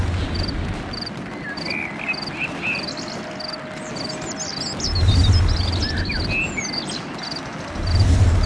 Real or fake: real